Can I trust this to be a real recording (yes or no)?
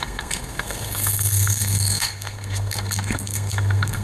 no